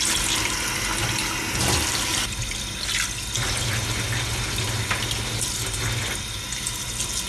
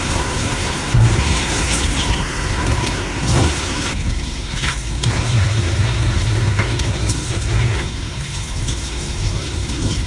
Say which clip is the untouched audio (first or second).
first